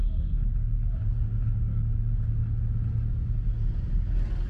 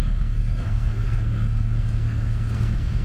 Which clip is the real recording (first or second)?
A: first